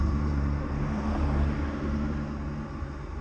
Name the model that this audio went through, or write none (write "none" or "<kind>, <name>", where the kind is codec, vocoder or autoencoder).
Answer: none